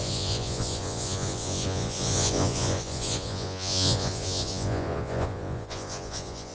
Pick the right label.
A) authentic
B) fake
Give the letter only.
B